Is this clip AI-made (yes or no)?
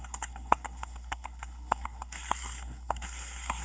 yes